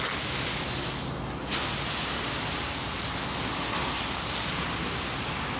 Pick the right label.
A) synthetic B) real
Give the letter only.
B